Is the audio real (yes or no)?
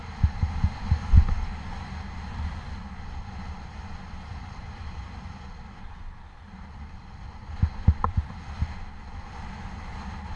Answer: yes